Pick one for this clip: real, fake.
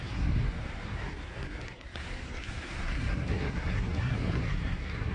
fake